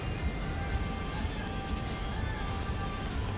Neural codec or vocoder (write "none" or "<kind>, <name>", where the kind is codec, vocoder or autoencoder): none